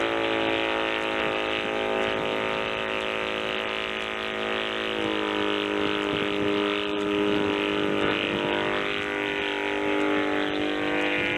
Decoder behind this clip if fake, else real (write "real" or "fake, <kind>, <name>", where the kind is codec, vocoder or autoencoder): real